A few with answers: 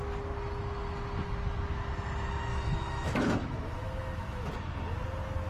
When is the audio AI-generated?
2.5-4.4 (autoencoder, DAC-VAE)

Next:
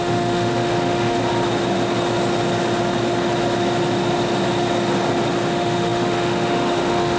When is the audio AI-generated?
0.0-1.2 (autoencoder, DAC-VAE); 5.5-7.2